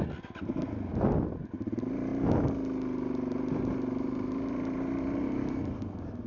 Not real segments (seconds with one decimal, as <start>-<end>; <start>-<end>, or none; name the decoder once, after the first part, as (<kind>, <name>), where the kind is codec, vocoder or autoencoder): none

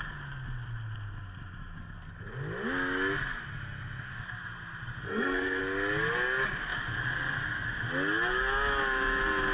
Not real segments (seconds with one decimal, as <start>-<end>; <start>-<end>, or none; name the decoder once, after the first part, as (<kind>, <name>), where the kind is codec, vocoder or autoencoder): 5.0-5.6 (codec, SNAC)

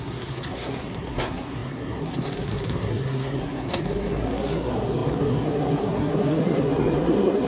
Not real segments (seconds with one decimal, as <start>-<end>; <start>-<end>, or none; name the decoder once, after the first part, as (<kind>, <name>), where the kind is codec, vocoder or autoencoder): 0.0-7.5 (codec, SNAC)

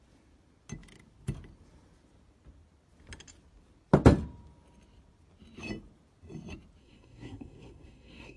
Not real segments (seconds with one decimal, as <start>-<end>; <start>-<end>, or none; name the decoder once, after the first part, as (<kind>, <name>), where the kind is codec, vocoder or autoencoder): 6.8-8.4 (codec, SNAC)

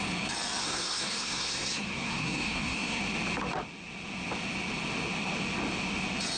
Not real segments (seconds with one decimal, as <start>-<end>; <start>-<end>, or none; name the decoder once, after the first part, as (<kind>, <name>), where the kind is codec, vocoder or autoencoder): 0.6-3.0 (codec, SNAC)

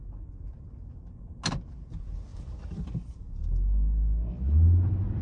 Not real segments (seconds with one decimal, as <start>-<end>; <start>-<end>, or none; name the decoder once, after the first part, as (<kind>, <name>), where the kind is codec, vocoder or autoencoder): none